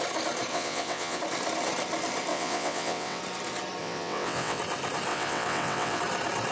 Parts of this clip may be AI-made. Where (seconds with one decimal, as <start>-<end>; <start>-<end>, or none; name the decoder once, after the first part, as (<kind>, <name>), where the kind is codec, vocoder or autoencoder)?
0.5-1.2 (vocoder, WaveNeXt); 2.3-3.2; 3.8-4.6; 5.1-6.0